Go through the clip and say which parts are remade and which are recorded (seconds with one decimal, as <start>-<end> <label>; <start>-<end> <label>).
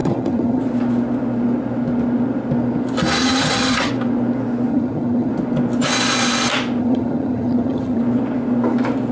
0.0-0.6 remade; 0.6-3.2 recorded; 3.2-3.9 remade; 3.9-4.7 recorded; 4.7-5.3 remade; 5.3-6.8 recorded; 6.8-8.0 remade; 8.0-9.1 recorded